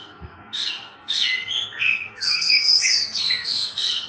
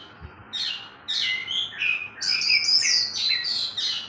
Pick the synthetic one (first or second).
first